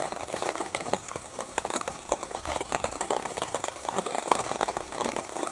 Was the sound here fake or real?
fake